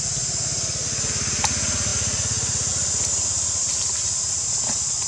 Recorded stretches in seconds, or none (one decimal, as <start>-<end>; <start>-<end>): 0.0-5.1